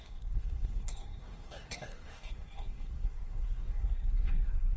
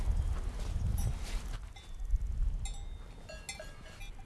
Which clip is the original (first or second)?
second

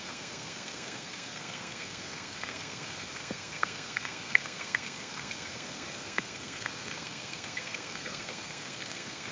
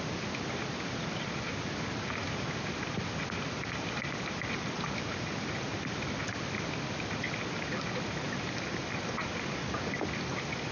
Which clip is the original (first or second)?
second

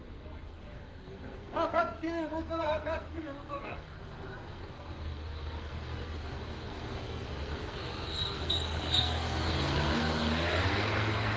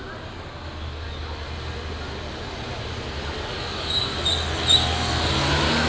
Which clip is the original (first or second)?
second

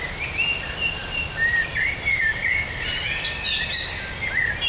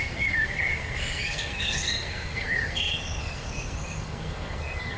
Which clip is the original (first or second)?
first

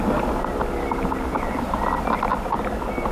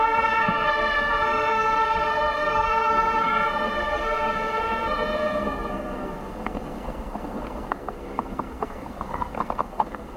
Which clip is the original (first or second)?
first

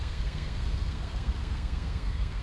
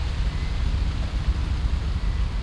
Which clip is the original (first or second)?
second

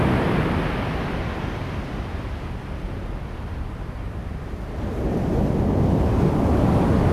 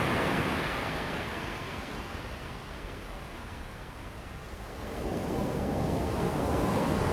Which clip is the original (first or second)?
first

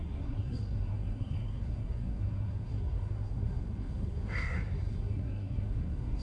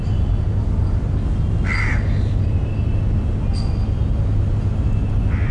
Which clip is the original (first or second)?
second